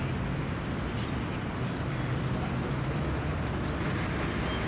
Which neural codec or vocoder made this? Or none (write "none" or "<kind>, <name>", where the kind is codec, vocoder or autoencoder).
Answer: none